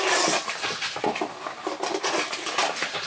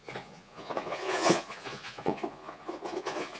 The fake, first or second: second